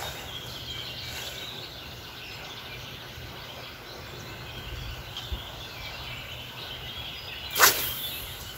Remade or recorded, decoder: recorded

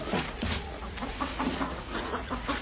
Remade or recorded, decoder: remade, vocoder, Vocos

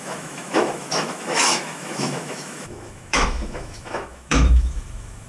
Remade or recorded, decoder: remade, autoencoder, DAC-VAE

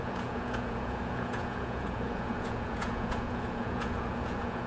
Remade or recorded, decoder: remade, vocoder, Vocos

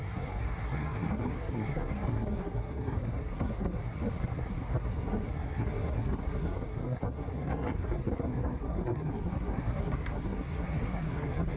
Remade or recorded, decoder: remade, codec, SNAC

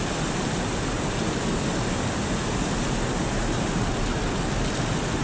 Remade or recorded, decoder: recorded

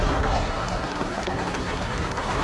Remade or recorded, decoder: remade, codec, SNAC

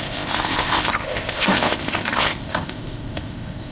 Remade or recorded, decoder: remade, codec, ZipCodec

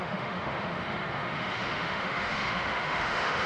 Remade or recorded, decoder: remade, autoencoder, DAC-VAE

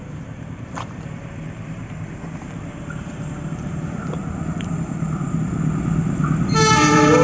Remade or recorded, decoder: remade, vocoder, BigVGAN v2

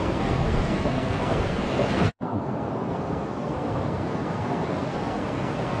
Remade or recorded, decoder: remade, codec, SNAC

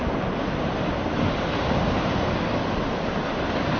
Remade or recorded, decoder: recorded